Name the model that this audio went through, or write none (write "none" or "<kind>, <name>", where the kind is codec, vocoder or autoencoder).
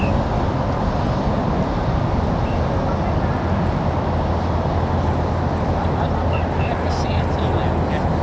none